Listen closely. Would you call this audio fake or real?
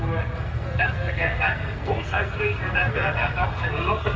fake